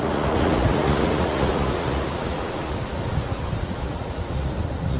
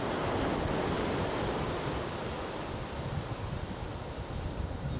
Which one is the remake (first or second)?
first